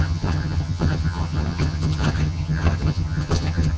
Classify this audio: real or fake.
fake